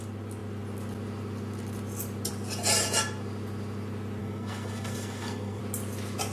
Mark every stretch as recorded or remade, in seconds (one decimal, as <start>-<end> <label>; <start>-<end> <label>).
0.0-4.2 recorded; 4.2-5.6 remade; 5.6-6.3 recorded